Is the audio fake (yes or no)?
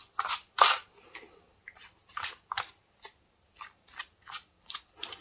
no